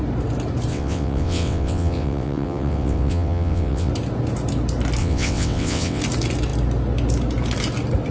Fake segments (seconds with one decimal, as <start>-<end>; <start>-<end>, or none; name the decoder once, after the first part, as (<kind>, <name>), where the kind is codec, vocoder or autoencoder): 0.7-3.9 (vocoder, WaveNeXt); 5.0-6.0